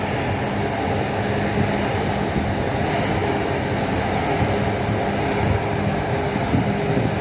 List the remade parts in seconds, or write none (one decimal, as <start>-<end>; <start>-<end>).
none